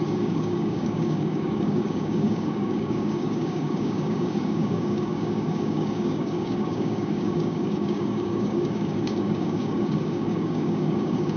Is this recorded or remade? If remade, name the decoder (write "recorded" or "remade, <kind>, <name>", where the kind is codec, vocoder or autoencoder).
remade, codec, DAC